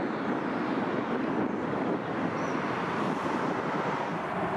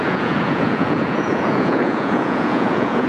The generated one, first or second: second